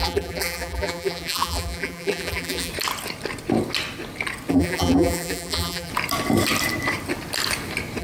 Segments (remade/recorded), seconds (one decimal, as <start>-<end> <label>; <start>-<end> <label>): 0.0-2.7 remade; 2.7-4.5 recorded; 4.5-5.9 remade; 5.9-8.0 recorded